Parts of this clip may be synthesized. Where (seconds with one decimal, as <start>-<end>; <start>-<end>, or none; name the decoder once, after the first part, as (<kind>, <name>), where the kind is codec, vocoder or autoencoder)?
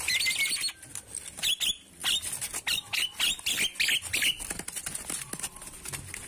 none